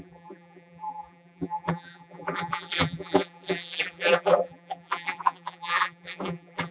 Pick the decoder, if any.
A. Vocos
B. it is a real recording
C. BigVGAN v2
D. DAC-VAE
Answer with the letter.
C